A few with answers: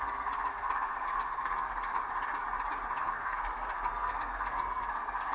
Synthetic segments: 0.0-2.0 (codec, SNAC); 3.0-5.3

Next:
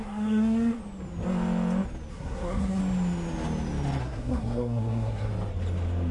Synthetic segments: 0.0-0.8 (codec, SNAC); 2.1-2.8; 4.0-5.3

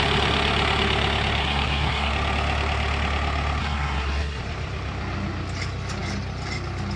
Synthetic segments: 1.4-2.1 (codec, SNAC); 3.6-4.4

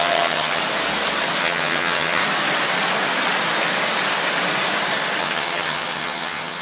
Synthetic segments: 0.0-0.6 (vocoder, HiFi-GAN); 1.4-2.2; 5.2-6.6

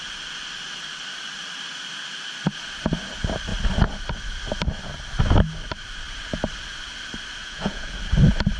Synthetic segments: 7.4-8.0 (vocoder, Vocos)

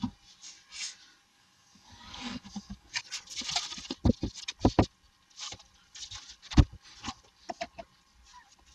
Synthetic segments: 1.3-3.0 (codec, DAC)

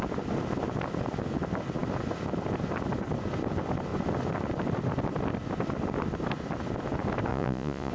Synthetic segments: 7.3-7.9 (vocoder, Vocos)